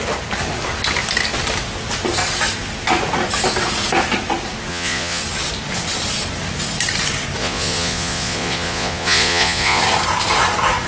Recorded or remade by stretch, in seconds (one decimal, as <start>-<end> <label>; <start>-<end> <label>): 0.0-4.7 recorded; 4.7-5.2 remade; 5.2-7.4 recorded; 7.4-9.8 remade; 9.8-10.9 recorded